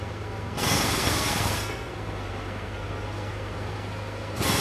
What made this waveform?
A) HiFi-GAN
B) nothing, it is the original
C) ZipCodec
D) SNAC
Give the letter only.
D